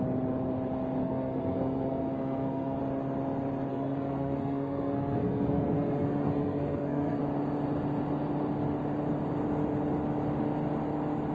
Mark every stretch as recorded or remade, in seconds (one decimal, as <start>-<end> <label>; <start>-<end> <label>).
0.0-1.0 recorded; 1.0-2.8 remade; 2.8-3.7 recorded; 3.7-7.2 remade; 7.2-11.3 recorded